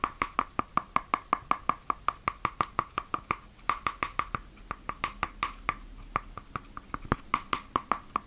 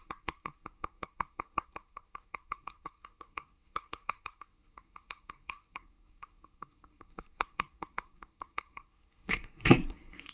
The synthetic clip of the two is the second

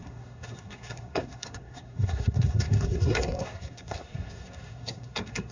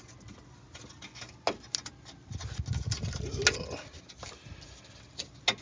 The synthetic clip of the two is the first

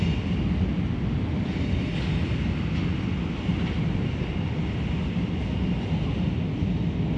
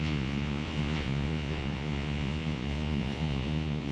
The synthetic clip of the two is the second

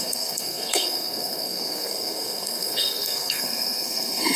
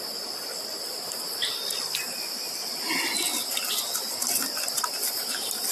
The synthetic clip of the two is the first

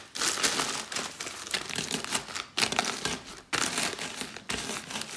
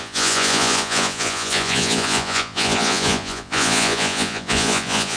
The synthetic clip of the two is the second